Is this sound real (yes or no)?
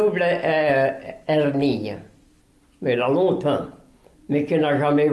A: yes